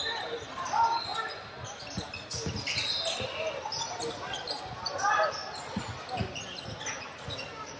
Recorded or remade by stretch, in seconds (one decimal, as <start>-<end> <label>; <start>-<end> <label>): 0.0-7.8 recorded